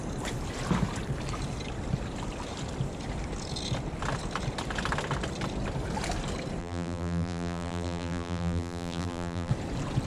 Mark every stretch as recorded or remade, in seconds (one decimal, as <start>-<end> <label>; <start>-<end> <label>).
0.0-6.6 recorded; 6.6-9.5 remade; 9.5-10.1 recorded